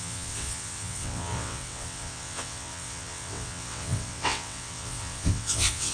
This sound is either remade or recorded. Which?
remade